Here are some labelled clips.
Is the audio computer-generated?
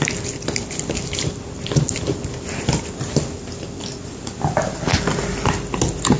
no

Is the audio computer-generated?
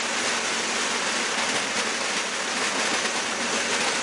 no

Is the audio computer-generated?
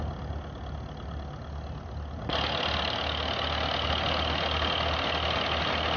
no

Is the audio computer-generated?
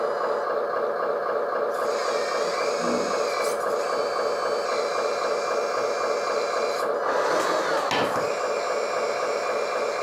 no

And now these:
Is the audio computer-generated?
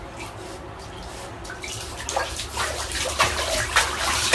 no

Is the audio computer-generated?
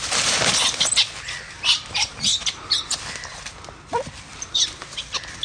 no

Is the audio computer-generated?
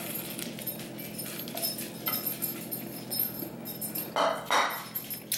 no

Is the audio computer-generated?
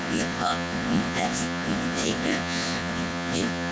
yes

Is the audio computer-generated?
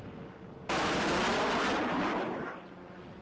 no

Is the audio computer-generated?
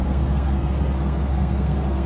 yes